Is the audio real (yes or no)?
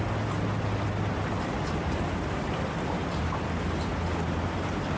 yes